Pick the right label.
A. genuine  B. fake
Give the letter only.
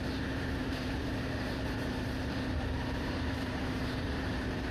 B